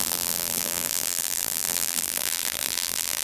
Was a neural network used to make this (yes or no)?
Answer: yes